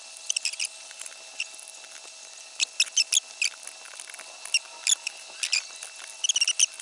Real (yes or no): yes